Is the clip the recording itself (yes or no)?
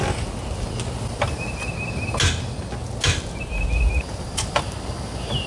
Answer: yes